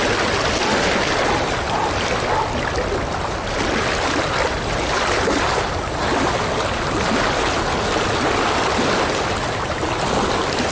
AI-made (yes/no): no